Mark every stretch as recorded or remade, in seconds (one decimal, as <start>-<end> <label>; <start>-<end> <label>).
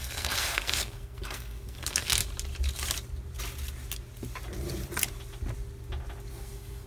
0.0-2.2 remade; 2.2-6.3 recorded; 6.3-6.9 remade